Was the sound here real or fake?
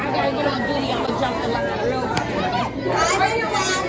real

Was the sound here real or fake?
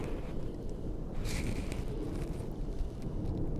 fake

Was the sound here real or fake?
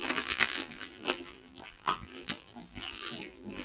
fake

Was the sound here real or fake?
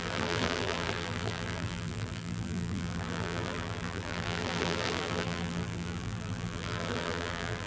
fake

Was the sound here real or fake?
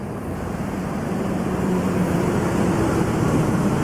fake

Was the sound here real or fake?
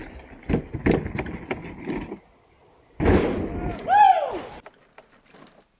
real